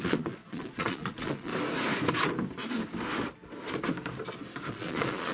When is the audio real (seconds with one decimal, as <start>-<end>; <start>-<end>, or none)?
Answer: 1.5-4.7